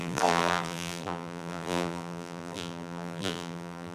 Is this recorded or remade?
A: remade